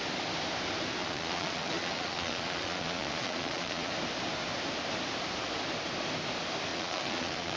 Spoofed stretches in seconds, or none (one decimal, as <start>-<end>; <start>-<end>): 1.0-3.9; 6.7-7.6